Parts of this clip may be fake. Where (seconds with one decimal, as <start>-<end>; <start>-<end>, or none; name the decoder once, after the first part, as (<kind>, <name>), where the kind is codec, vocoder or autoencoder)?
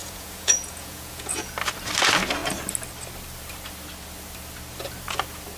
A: 0.0-1.5 (vocoder, Vocos)